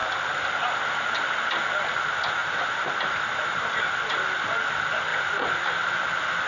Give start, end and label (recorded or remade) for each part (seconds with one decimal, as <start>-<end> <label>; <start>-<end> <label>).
0.0-2.4 recorded; 2.4-3.7 remade; 3.7-6.5 recorded